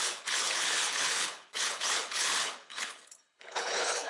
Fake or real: fake